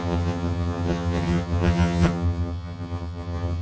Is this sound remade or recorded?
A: remade